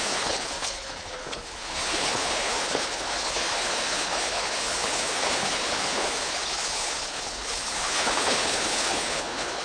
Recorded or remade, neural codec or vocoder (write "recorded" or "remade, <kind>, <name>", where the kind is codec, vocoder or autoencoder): remade, codec, HILCodec